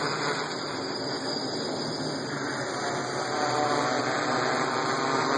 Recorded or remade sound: recorded